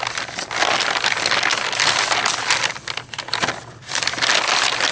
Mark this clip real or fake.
real